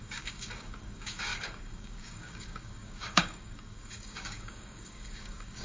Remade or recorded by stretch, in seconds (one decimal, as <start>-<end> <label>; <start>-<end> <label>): 0.0-5.6 remade